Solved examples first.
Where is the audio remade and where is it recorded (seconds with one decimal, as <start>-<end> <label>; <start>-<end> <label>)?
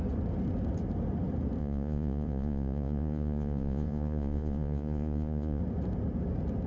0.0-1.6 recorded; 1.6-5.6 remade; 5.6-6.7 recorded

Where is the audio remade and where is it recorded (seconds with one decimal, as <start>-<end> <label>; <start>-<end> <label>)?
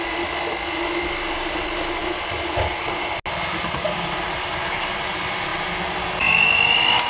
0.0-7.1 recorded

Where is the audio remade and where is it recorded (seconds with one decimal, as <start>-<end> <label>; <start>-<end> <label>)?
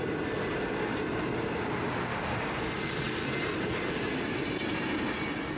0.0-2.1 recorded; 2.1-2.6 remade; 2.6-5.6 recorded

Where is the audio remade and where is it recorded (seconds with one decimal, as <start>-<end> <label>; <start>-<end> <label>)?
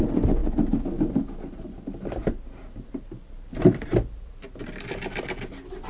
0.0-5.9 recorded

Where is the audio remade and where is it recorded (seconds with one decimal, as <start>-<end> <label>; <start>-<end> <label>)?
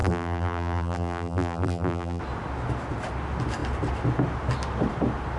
0.0-2.2 remade; 2.2-5.4 recorded